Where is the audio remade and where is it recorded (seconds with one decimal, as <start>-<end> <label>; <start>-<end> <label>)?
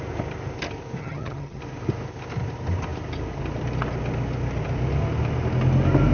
0.0-1.0 recorded; 1.0-1.6 remade; 1.6-6.1 recorded